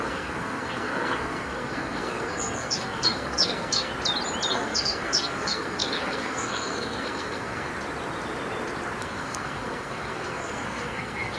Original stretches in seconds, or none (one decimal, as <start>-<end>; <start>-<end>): 3.9-4.5; 7.7-9.0